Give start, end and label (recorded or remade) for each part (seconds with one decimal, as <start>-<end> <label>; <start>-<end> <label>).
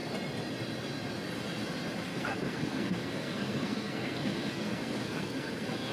0.0-2.1 recorded; 2.1-5.9 remade